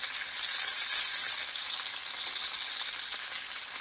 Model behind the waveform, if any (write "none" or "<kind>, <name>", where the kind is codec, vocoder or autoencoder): none